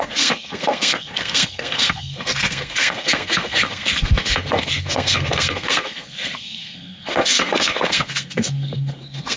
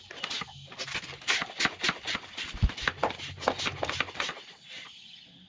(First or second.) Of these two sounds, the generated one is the first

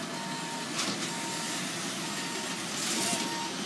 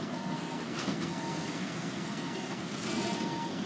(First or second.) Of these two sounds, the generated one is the second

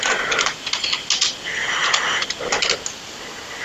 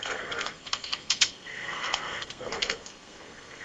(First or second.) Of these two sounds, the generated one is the second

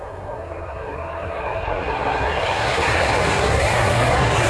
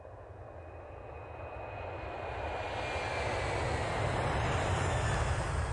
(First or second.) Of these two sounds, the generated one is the first